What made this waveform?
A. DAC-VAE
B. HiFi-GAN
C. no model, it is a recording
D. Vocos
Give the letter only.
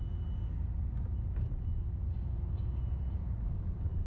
C